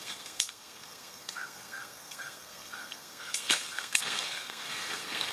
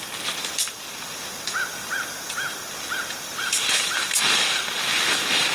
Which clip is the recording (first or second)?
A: second